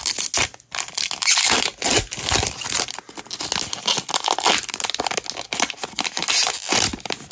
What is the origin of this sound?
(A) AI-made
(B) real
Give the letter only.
B